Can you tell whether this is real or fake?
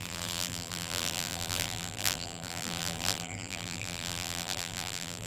fake